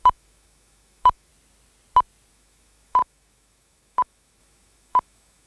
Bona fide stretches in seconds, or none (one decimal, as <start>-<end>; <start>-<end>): 1.3-2.3